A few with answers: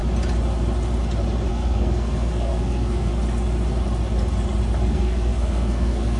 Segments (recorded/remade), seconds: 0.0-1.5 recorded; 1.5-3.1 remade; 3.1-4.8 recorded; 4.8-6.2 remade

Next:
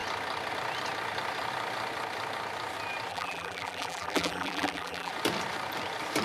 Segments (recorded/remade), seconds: 0.0-3.1 recorded; 3.1-5.1 remade; 5.1-6.2 recorded